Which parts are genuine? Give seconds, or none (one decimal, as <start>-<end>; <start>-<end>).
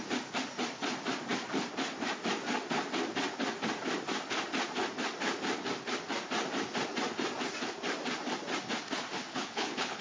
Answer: 0.0-9.3